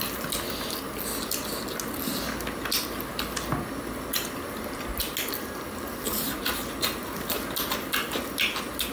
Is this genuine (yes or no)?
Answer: yes